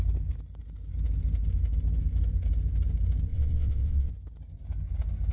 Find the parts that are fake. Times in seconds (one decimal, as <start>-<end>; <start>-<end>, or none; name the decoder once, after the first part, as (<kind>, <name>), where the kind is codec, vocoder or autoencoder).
3.3-4.1 (vocoder, WaveNeXt)